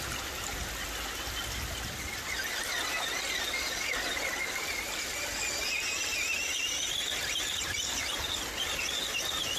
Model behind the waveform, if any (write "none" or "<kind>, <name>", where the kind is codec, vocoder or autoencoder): none